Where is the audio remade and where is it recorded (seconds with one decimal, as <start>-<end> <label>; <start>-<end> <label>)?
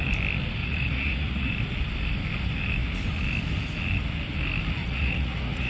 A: 0.0-0.6 recorded; 0.6-1.5 remade; 1.5-4.8 recorded; 4.8-5.7 remade